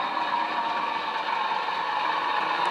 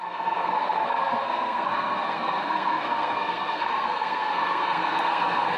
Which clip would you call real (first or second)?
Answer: first